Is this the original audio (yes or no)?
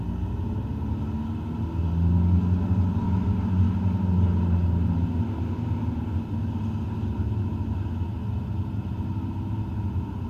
yes